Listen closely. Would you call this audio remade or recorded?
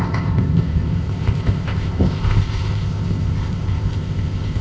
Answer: remade